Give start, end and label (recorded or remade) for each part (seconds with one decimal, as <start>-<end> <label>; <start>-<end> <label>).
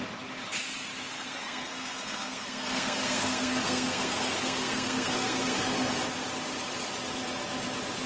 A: 0.0-1.1 recorded; 1.1-5.9 remade; 5.9-8.1 recorded